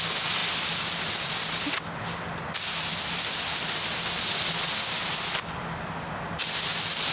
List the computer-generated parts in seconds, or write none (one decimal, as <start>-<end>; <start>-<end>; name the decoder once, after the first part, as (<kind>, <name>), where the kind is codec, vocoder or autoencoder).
none

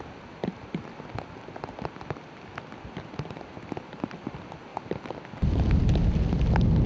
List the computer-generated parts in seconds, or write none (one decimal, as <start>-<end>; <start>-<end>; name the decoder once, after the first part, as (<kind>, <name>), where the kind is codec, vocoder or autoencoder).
none

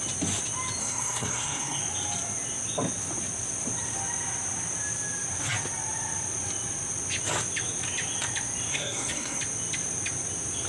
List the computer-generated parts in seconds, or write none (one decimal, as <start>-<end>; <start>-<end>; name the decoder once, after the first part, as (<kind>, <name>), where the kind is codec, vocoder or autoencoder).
0.8-1.8 (codec, SNAC); 8.7-9.4

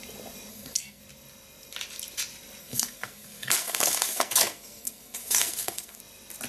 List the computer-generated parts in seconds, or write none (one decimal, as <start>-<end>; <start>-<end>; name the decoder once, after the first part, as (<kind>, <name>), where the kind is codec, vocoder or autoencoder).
0.5-1.0 (codec, SNAC); 2.6-6.0

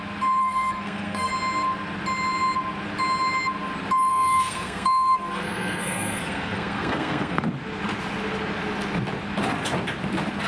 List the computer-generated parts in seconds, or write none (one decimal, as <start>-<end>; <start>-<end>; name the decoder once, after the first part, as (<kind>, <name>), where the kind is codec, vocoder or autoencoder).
0.4-1.3 (codec, SNAC); 4.1-7.5

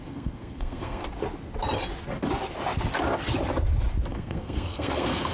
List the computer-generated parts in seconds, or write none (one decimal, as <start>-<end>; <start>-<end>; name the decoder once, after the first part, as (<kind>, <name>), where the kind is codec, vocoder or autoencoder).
0.0-1.0 (codec, SNAC); 4.1-5.3

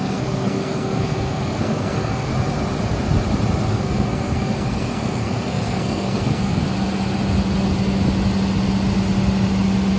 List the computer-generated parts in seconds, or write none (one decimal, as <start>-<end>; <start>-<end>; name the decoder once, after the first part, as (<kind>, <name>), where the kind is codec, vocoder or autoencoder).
0.0-2.3 (codec, SNAC); 3.7-6.6

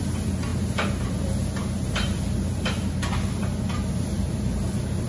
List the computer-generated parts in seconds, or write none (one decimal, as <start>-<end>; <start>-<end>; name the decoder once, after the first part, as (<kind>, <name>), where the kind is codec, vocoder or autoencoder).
none